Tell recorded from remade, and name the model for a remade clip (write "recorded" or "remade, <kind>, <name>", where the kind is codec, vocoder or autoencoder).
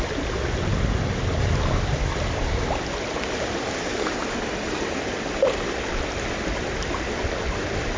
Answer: recorded